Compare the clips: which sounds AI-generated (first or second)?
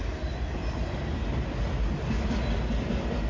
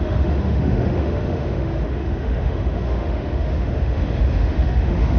second